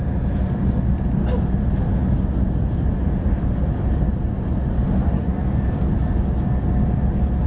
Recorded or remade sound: recorded